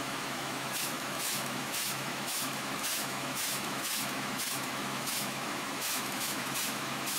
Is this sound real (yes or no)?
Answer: no